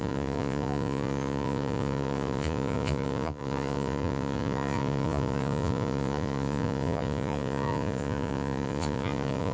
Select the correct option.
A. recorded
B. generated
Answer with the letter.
B